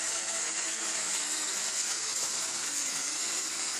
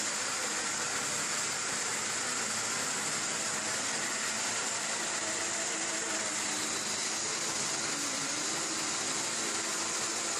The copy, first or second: first